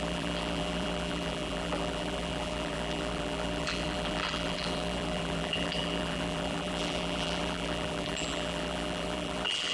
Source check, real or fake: fake